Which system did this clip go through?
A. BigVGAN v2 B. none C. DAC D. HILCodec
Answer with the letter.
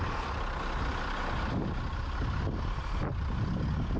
B